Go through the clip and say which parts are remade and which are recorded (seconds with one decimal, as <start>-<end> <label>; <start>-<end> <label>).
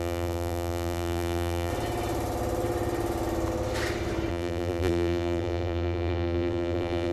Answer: 0.0-1.7 remade; 1.7-4.3 recorded; 4.3-7.1 remade